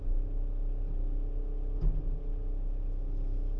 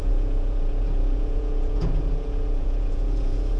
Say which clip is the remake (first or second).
second